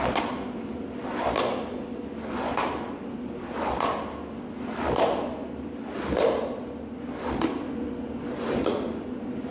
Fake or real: real